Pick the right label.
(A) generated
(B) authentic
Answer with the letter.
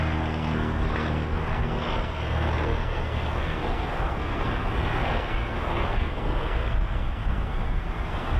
A